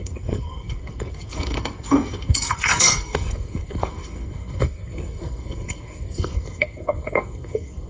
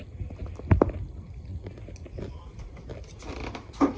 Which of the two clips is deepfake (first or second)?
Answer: first